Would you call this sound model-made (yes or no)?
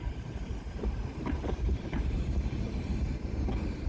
yes